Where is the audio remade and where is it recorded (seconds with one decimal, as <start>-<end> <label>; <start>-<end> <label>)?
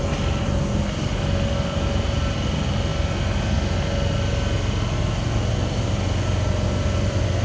0.0-7.4 recorded